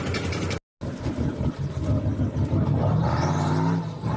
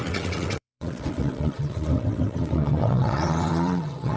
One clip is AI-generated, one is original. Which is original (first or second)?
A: first